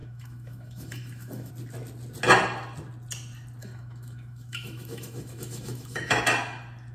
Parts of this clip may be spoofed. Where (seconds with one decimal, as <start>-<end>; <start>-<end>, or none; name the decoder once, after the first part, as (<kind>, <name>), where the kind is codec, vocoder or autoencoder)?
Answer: 0.0-1.5 (autoencoder, DAC-VAE); 3.6-6.2